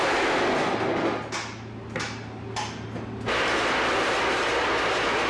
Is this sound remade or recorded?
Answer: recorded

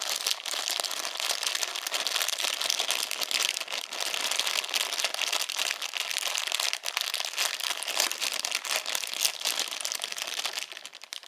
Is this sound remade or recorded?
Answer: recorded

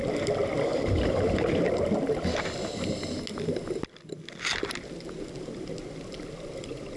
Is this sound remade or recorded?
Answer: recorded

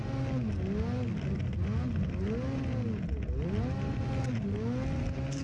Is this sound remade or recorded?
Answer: recorded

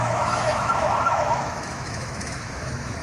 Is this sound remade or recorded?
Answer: remade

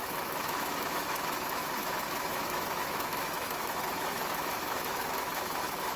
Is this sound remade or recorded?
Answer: remade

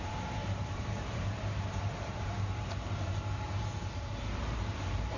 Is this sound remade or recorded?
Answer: remade